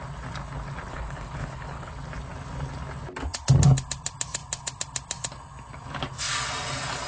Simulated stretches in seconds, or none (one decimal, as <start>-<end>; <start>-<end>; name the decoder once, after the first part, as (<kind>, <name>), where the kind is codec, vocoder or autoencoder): 0.9-1.9 (codec, HILCodec)